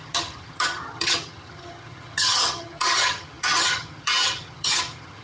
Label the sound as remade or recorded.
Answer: remade